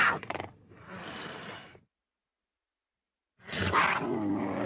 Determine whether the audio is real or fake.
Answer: real